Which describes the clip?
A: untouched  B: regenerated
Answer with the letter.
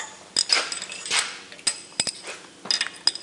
A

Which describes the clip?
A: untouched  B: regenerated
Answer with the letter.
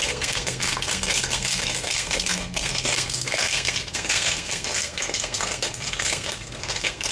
B